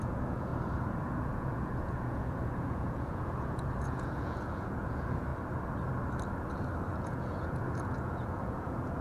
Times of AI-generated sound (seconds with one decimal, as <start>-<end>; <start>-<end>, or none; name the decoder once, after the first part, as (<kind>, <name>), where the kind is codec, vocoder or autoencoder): 0.0-0.5 (vocoder, Vocos); 1.0-5.3; 6.9-9.0